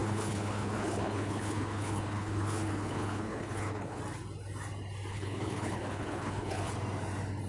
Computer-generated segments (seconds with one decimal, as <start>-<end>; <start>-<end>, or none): 0.0-4.0; 5.1-6.7